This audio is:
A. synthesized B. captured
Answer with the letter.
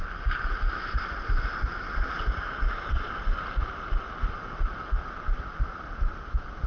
B